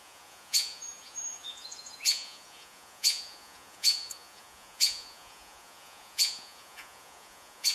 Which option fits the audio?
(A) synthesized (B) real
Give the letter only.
A